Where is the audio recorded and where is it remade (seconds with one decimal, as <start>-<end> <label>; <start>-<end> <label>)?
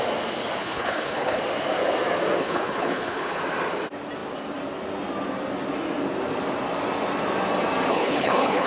0.0-0.6 recorded; 0.6-1.4 remade; 1.4-2.4 recorded; 2.4-3.4 remade; 3.4-7.9 recorded; 7.9-8.7 remade